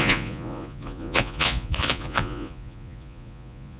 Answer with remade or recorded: remade